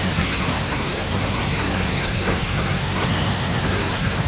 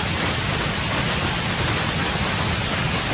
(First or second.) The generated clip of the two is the first